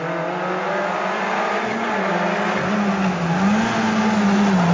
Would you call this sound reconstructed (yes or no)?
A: no